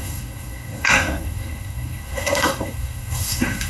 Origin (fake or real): fake